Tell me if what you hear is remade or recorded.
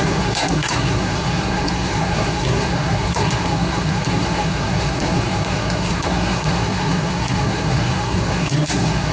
remade